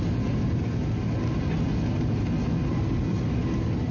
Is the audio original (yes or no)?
yes